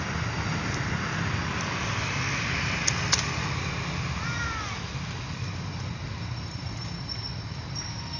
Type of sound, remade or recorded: recorded